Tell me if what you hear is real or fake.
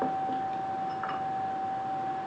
real